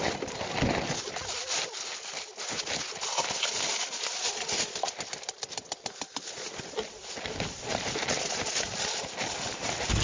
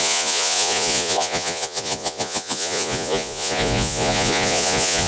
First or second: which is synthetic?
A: second